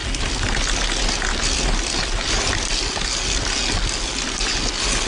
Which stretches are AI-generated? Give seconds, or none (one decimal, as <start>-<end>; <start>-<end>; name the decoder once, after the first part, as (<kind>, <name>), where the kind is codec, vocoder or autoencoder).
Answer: none